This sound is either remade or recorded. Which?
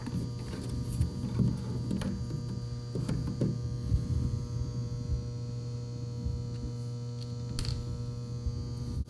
recorded